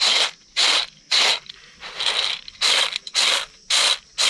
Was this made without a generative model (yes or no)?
yes